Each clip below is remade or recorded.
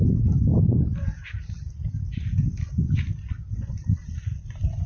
recorded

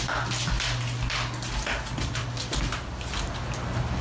recorded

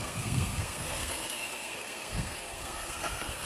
remade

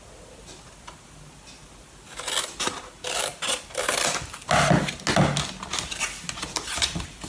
recorded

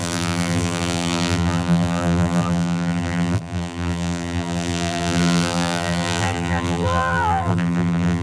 remade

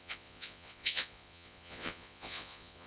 remade